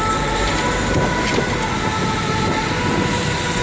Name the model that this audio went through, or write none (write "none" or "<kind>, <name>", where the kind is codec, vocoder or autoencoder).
none